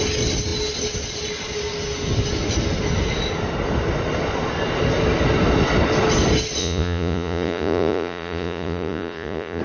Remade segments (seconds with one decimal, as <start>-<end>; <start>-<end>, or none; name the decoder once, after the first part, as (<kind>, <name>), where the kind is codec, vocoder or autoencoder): 6.6-9.6 (vocoder, Vocos)